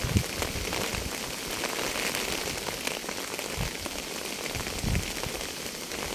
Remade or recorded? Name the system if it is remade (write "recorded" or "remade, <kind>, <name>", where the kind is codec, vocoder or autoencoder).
recorded